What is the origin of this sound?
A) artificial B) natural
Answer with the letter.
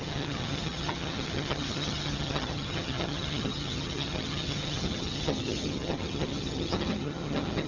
A